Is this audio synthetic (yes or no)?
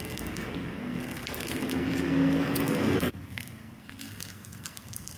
yes